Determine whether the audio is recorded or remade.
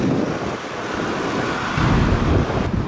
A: recorded